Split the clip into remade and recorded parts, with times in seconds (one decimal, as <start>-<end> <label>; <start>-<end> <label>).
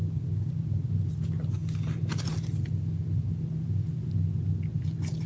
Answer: 0.0-5.3 recorded